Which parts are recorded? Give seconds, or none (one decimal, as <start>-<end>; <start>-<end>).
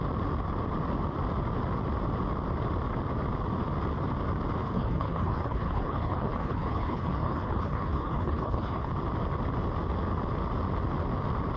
0.0-4.6; 8.9-11.6